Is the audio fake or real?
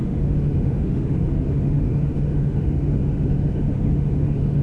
fake